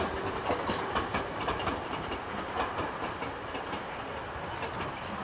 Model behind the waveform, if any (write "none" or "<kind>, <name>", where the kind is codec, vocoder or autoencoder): none